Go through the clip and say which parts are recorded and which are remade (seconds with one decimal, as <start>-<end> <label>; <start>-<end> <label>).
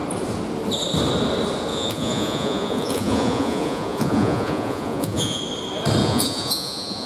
0.0-1.7 recorded; 1.7-5.4 remade; 5.4-6.0 recorded; 6.0-7.1 remade